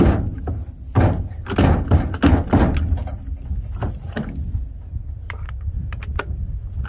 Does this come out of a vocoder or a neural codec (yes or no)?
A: no